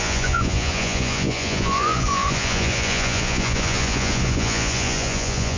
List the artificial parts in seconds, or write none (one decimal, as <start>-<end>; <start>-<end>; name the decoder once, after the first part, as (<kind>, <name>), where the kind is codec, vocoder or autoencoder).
0.0-5.6 (vocoder, Vocos)